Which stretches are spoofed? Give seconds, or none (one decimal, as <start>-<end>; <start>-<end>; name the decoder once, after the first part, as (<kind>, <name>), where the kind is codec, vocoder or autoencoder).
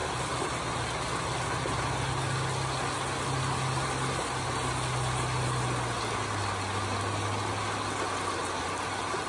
none